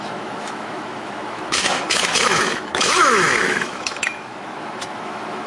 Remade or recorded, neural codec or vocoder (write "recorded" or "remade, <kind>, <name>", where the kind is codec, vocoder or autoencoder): remade, autoencoder, DAC-VAE